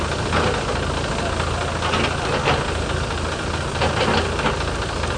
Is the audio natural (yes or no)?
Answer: yes